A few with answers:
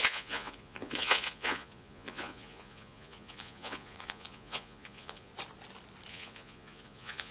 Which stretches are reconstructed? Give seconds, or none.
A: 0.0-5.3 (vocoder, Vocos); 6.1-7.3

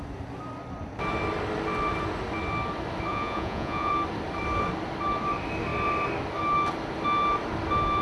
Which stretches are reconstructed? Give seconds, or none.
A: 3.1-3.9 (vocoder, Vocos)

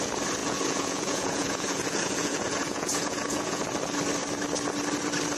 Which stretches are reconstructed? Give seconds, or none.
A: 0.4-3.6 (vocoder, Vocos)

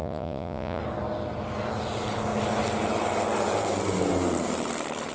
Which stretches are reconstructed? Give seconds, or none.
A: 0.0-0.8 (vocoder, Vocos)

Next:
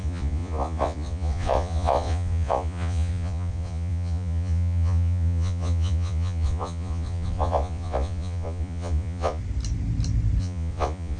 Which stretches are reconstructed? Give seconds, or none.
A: 0.0-9.4 (vocoder, Vocos); 10.4-11.2

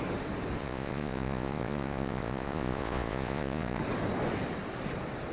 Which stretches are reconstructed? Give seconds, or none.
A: 0.6-3.8 (vocoder, Vocos)

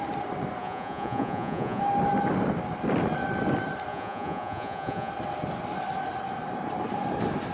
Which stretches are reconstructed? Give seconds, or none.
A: 0.6-1.8 (vocoder, Vocos); 3.9-5.1

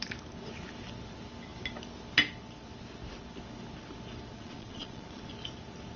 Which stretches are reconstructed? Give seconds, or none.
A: 4.3-5.2 (vocoder, Vocos)